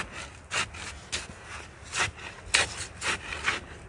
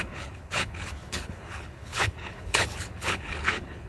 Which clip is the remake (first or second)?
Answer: second